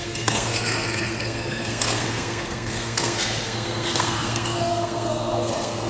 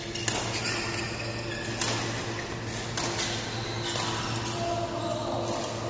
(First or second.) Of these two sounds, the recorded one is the second